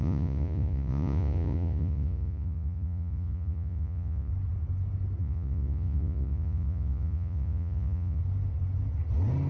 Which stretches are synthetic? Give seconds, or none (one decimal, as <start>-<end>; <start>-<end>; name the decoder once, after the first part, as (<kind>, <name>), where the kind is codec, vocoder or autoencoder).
0.0-4.3 (vocoder, Vocos); 5.2-8.2